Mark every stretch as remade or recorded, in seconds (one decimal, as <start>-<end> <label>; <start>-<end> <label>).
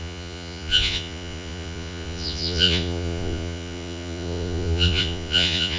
0.0-5.8 remade